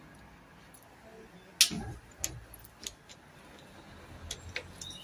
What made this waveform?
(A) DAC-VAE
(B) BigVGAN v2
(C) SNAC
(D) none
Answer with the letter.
D